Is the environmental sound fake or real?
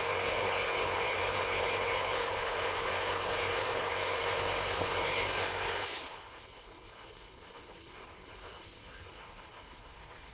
fake